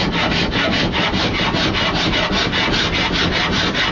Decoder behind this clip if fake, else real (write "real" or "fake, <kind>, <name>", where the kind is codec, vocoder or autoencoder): real